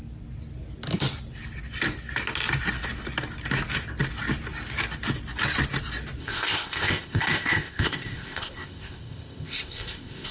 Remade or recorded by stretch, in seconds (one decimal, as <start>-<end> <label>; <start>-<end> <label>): 0.0-6.2 recorded; 6.2-10.3 remade